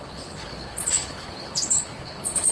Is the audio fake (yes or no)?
yes